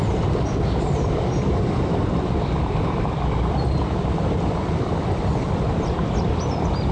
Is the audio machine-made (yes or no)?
yes